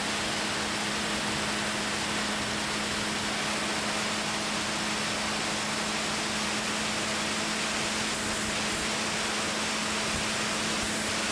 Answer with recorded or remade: recorded